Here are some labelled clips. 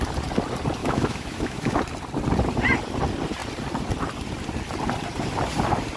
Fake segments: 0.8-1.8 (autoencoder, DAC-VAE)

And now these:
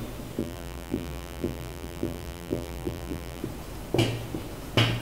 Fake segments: 0.4-3.4 (vocoder, BigVGAN v2)

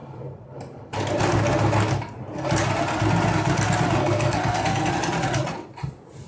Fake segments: 4.0-4.9 (codec, SNAC)

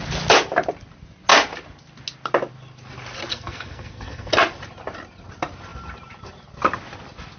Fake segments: 3.3-4.3 (codec, SNAC)

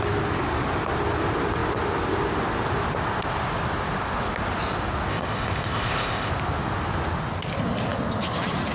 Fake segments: 5.1-6.3 (codec, ZipCodec)

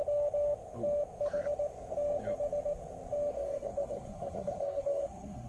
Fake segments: 3.3-5.5 (codec, SNAC)